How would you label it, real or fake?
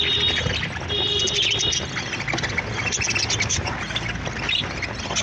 real